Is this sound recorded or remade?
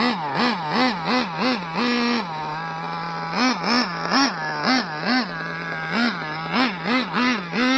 recorded